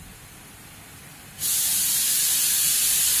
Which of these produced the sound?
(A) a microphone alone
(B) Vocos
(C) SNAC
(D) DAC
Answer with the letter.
A